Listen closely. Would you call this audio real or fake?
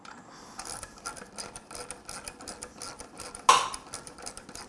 real